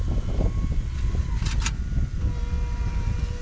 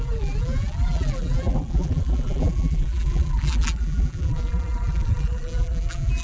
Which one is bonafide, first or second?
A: first